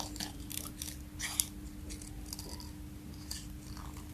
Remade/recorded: recorded